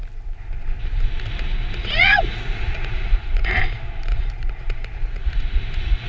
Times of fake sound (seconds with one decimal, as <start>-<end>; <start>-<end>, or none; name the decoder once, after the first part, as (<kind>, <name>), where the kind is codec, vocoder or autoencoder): 1.8-3.6 (vocoder, Vocos); 4.1-6.1

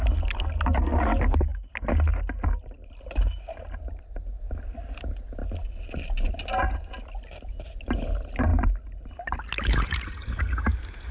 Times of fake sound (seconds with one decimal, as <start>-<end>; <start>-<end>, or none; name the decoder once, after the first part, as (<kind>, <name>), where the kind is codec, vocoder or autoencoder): none

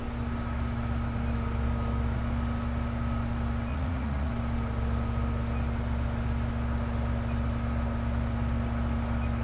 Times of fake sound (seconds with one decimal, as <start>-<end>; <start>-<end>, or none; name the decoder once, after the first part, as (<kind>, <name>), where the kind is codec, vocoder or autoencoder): 3.7-4.3 (vocoder, Vocos)

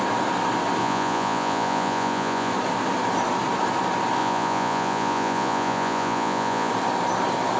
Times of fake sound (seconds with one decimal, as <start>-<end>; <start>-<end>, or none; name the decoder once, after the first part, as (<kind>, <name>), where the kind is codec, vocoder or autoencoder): 0.8-2.5 (vocoder, Vocos); 4.2-6.7

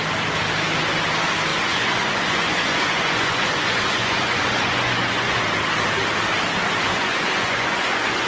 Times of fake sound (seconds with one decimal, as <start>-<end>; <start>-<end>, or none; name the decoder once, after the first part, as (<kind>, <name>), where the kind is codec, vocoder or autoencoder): 1.5-5.4 (vocoder, Vocos); 6.9-8.3

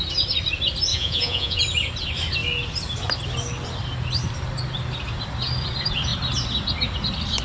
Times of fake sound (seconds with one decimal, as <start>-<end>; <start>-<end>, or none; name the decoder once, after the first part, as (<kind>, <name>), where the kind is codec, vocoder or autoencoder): 0.9-1.6 (vocoder, Vocos)

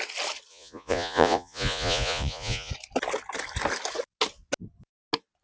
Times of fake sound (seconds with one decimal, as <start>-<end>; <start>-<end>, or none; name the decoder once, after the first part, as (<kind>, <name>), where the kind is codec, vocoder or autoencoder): 0.5-2.7 (vocoder, Vocos)